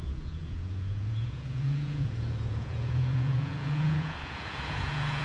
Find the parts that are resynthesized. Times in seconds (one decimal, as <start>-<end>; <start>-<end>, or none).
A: 0.0-5.2